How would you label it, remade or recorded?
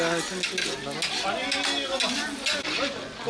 recorded